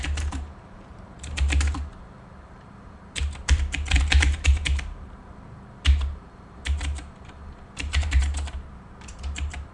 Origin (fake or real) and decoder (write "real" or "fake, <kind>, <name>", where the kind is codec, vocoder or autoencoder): fake, vocoder, BigVGAN v2